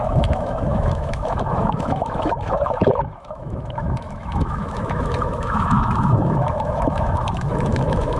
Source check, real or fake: fake